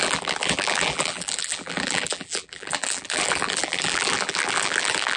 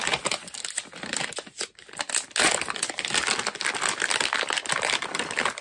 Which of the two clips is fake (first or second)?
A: first